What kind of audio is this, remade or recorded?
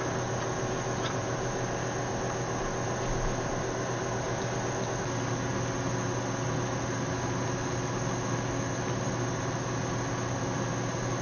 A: recorded